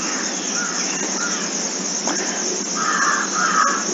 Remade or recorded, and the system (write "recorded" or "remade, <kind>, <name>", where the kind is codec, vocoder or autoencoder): recorded